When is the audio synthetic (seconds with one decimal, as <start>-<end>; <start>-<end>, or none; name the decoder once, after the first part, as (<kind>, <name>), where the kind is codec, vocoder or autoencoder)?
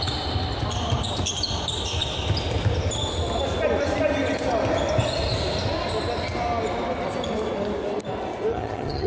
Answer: 8.5-9.1 (vocoder, HiFi-GAN)